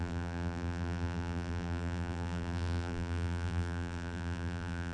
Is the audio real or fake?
fake